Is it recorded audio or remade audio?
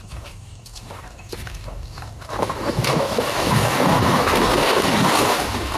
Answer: remade